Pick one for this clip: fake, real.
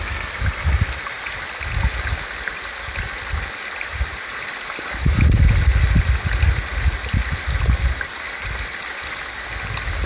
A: real